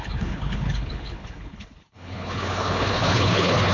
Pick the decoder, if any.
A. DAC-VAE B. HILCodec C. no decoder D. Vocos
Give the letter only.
B